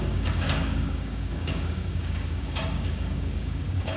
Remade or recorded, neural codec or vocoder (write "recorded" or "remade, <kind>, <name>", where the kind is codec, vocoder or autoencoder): remade, codec, DAC